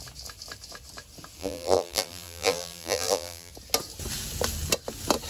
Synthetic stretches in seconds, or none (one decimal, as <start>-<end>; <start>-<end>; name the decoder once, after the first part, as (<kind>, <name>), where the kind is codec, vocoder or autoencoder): 1.4-3.5 (vocoder, BigVGAN v2)